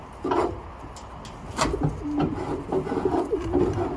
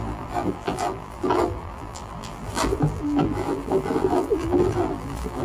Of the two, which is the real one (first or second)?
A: first